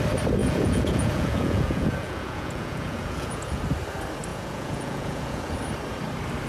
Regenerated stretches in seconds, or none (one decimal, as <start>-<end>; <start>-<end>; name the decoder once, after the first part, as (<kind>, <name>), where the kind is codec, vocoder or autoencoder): 0.4-3.6 (vocoder, Vocos); 4.3-5.6